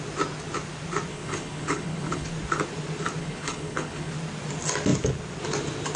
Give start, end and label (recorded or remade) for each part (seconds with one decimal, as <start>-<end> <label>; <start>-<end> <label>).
0.0-1.1 recorded; 1.1-2.3 remade; 2.3-3.2 recorded; 3.2-4.1 remade; 4.1-6.0 recorded